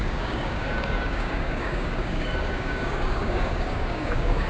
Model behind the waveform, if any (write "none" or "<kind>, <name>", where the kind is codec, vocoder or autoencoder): codec, DAC